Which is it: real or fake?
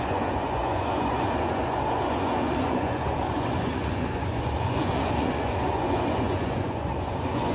fake